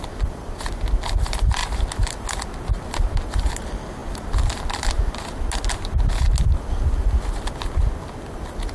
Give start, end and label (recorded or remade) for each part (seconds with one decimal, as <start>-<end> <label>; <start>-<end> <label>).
0.0-8.7 recorded